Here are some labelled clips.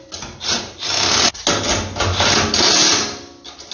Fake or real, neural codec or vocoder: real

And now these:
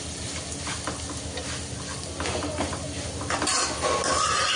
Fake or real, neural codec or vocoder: real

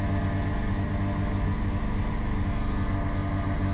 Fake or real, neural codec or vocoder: real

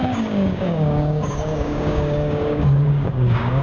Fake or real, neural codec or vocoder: fake, codec, DAC